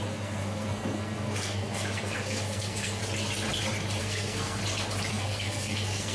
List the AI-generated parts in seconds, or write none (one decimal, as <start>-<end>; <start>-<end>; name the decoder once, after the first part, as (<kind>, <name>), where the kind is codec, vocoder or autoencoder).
0.0-3.0 (codec, SNAC); 4.0-4.6; 5.1-6.1